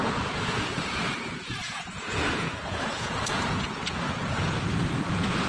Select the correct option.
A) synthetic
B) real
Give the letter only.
A